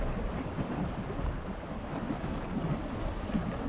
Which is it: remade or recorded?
recorded